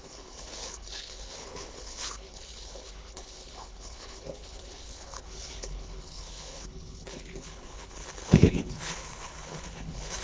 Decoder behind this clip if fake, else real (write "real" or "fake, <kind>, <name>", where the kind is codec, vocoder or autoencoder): fake, codec, HILCodec